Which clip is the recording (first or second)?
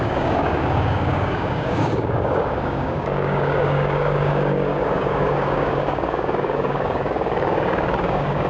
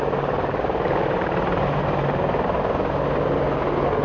second